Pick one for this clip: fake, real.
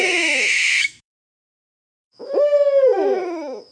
fake